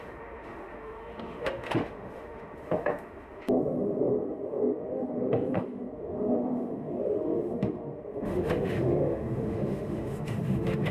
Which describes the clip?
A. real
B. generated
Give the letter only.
B